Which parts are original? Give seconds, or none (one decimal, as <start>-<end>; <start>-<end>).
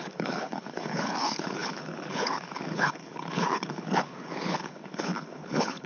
none